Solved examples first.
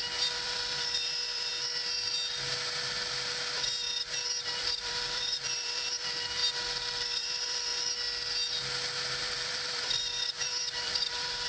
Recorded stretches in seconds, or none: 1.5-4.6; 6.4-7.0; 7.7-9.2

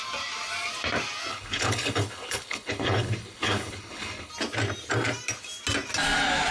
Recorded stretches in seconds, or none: 0.0-1.3; 4.3-6.5

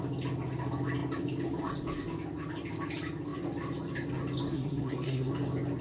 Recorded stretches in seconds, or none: 0.0-4.5; 5.3-5.8

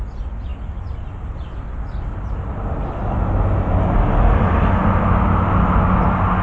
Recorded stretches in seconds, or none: 0.0-6.4

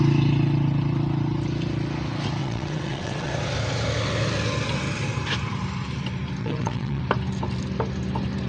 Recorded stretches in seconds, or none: 0.0-2.4; 3.3-6.4; 7.0-8.5